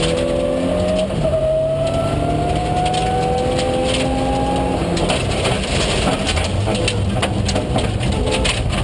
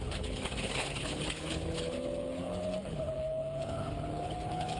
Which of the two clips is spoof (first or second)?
second